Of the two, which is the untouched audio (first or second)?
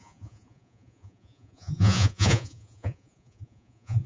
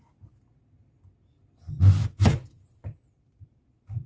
second